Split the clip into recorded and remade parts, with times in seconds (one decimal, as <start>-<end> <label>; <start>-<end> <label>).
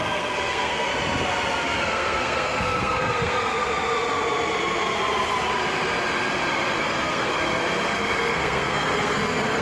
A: 0.0-0.9 remade; 0.9-1.6 recorded; 1.6-3.5 remade; 3.5-6.8 recorded; 6.8-7.3 remade; 7.3-8.2 recorded; 8.2-9.6 remade